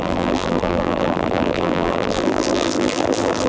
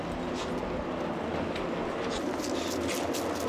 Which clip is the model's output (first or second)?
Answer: first